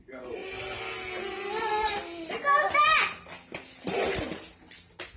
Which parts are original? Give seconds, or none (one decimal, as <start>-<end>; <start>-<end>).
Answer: 0.4-1.6; 2.0-5.2